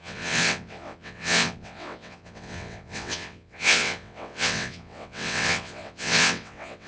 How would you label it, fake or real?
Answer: fake